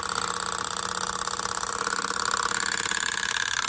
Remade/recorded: recorded